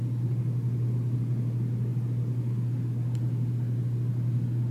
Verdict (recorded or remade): recorded